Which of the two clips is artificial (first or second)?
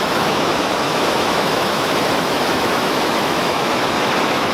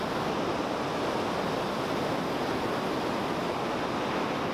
first